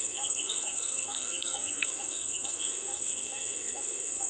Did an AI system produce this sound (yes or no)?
yes